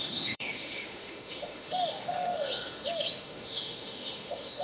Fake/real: fake